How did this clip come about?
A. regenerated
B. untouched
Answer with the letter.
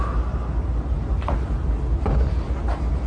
B